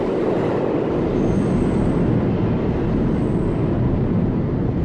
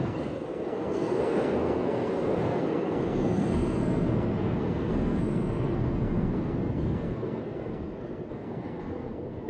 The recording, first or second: first